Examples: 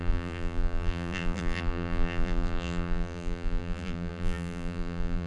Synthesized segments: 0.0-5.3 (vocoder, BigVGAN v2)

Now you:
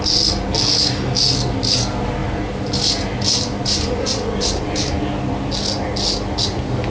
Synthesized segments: none